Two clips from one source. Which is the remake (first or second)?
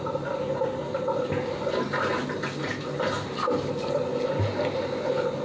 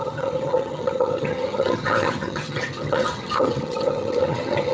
second